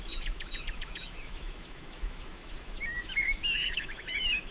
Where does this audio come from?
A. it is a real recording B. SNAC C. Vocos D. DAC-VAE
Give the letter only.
D